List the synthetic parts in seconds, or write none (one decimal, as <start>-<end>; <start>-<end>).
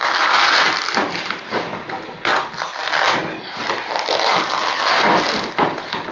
none